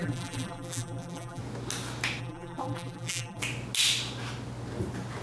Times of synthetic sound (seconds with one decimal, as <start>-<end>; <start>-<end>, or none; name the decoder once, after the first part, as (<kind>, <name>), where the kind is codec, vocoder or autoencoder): 0.0-1.4 (vocoder, BigVGAN v2); 2.2-3.4